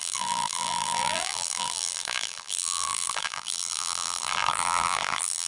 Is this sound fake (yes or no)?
yes